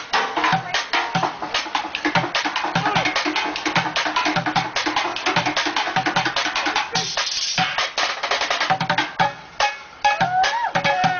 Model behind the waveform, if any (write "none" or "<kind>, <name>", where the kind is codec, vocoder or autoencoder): none